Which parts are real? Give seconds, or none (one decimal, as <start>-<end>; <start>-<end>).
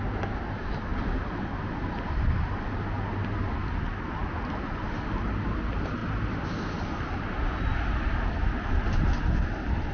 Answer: 0.0-9.9